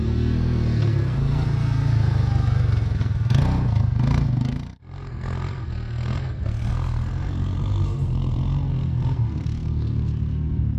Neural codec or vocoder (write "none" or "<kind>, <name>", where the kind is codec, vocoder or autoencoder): codec, SNAC